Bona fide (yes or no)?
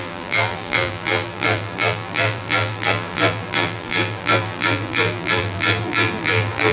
no